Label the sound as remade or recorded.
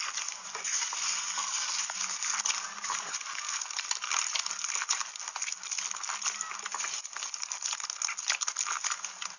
recorded